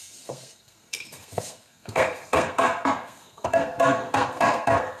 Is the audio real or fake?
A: fake